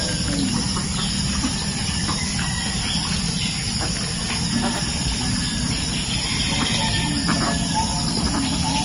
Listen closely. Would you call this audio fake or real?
real